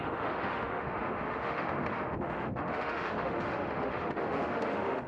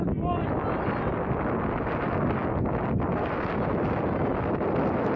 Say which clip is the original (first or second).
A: second